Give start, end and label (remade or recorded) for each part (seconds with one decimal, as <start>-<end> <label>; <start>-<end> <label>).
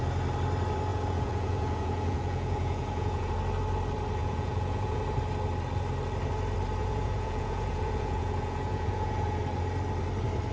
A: 0.0-0.9 recorded; 0.9-3.3 remade; 3.3-4.2 recorded; 4.2-5.0 remade; 5.0-6.8 recorded; 6.8-9.4 remade; 9.4-10.5 recorded